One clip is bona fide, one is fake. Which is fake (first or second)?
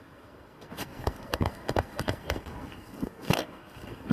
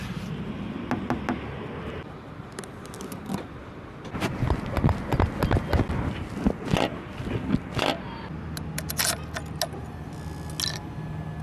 first